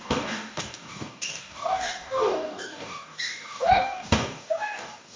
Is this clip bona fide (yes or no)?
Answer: no